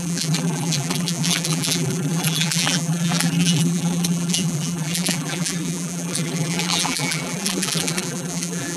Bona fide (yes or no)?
no